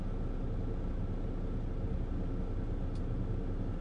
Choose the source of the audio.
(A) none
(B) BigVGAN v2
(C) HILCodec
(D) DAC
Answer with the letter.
A